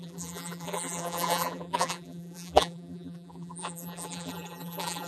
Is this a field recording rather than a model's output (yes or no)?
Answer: no